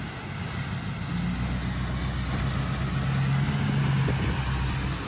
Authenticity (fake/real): real